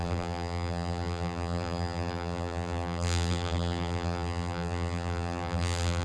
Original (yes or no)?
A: no